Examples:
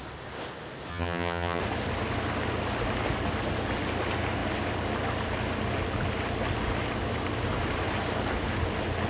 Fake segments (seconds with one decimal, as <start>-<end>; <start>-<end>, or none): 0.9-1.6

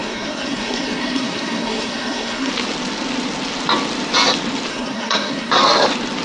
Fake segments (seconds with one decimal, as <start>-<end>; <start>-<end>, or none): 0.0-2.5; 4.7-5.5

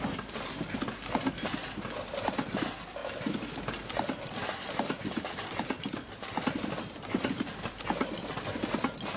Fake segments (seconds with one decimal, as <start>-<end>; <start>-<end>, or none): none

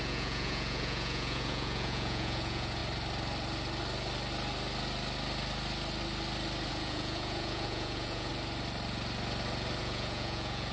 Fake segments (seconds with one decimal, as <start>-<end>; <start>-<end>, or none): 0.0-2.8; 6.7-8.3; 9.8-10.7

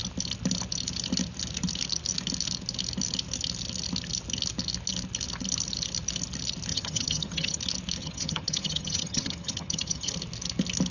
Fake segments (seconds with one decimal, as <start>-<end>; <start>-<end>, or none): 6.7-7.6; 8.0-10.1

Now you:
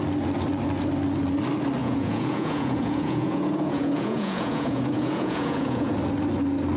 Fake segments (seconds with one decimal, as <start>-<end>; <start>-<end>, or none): 1.8-5.9